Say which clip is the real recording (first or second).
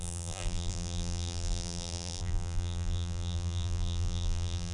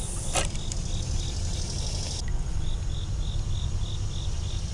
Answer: second